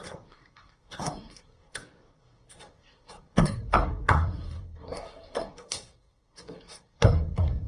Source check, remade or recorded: remade